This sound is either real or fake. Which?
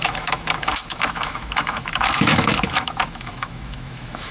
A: fake